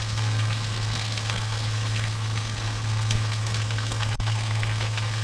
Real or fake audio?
fake